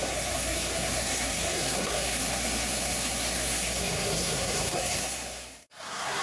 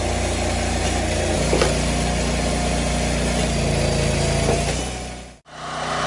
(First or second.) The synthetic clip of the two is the first